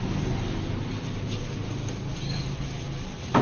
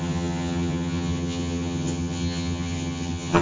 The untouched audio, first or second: first